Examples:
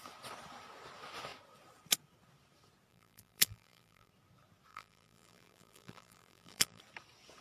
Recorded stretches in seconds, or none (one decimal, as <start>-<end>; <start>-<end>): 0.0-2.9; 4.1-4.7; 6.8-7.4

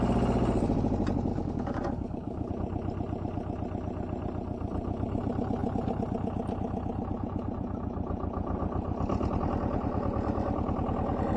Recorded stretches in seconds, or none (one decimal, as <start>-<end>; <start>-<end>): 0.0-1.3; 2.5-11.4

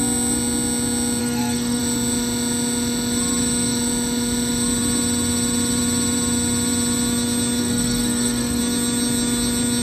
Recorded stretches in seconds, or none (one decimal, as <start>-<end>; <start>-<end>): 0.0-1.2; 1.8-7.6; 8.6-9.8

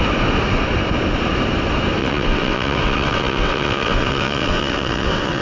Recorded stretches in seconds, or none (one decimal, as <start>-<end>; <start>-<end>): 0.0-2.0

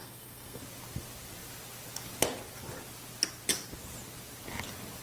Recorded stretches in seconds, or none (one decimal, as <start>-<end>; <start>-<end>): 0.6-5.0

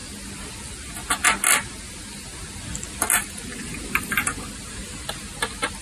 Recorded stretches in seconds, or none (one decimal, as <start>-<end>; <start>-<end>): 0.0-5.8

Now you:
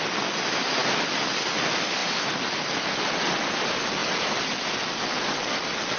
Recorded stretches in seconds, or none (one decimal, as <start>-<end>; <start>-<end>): 0.0-0.8; 1.6-2.0; 2.6-6.0

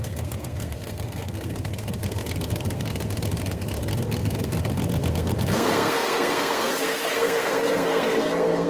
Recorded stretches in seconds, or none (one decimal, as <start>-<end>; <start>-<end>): none